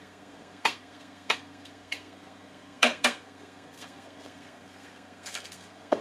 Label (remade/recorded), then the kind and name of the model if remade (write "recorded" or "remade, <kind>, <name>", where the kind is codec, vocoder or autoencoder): remade, codec, SNAC